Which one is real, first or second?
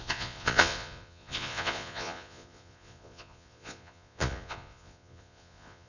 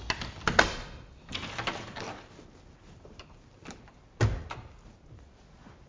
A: second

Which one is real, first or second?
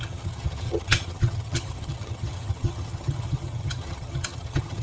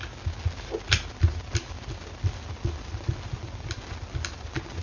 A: second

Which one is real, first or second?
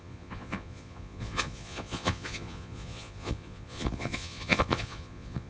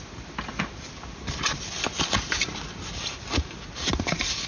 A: second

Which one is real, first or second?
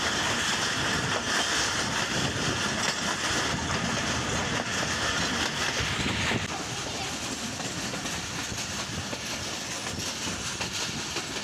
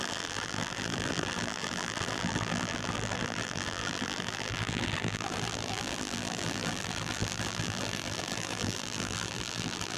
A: first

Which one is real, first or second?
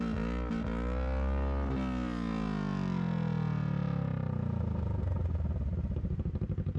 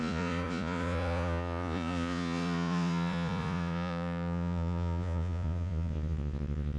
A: first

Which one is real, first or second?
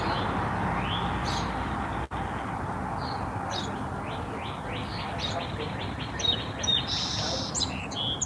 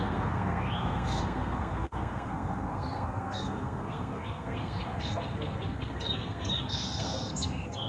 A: first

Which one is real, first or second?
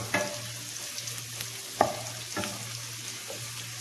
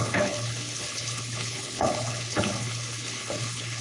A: first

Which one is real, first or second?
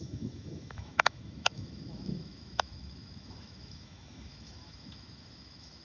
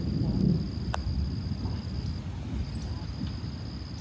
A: second